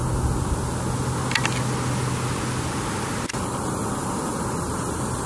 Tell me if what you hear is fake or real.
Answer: real